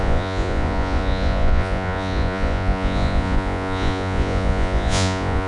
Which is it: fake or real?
fake